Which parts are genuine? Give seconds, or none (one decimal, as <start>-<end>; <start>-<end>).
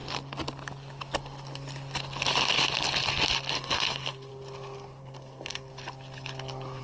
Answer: 0.0-3.5; 4.3-5.0; 5.7-6.8